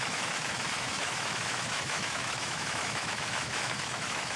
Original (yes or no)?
no